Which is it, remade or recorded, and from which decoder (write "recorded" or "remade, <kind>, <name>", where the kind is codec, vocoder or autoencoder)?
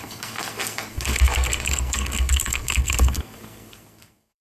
remade, codec, SNAC